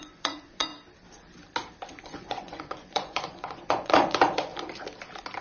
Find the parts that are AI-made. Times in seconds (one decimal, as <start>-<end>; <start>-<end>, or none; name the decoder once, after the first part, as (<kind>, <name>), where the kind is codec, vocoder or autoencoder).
0.0-0.7 (vocoder, Vocos); 2.0-4.5